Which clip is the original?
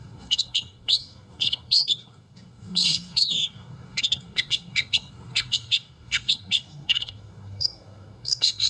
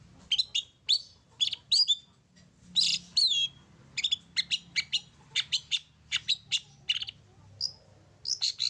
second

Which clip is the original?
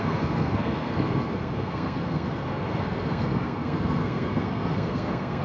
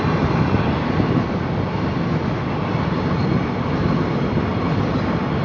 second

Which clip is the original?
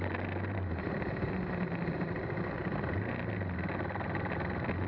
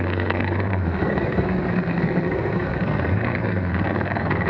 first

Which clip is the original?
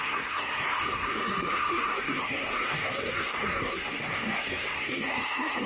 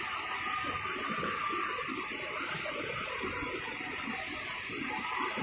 second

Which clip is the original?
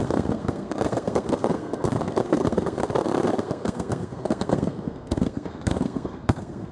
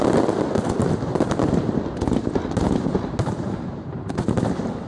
second